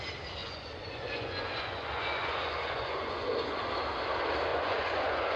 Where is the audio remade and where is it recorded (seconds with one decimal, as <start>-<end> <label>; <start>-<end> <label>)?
0.0-0.4 recorded; 0.4-3.6 remade; 3.6-4.5 recorded; 4.5-5.4 remade